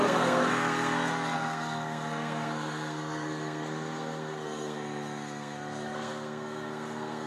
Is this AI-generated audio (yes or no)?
yes